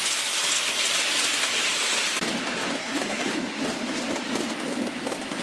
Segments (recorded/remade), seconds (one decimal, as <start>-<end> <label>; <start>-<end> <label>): 0.0-2.8 recorded; 2.8-3.3 remade; 3.3-5.4 recorded